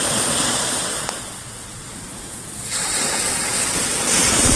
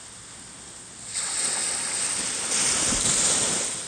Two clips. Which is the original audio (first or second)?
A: second